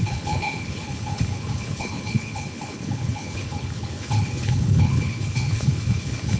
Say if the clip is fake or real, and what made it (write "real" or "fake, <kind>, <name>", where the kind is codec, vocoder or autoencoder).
fake, codec, HILCodec